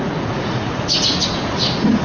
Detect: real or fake fake